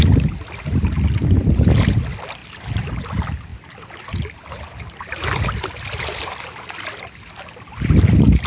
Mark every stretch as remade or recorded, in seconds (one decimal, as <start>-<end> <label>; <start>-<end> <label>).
0.0-8.5 recorded